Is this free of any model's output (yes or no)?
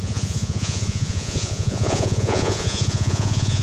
no